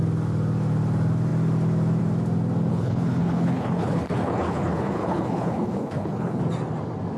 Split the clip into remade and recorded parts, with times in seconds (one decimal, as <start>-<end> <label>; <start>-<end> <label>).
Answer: 0.0-2.7 recorded; 2.7-6.4 remade; 6.4-7.2 recorded